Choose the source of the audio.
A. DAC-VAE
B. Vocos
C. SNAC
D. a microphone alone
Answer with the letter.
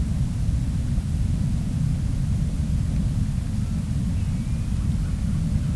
D